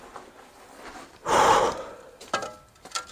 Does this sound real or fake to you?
real